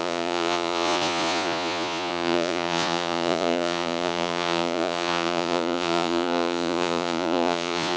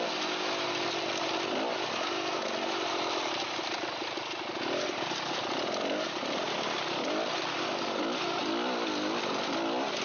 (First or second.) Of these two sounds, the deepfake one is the first